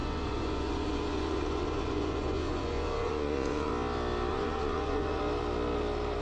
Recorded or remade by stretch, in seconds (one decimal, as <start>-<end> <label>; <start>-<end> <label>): 0.0-3.7 remade; 3.7-4.3 recorded; 4.3-5.2 remade; 5.2-6.2 recorded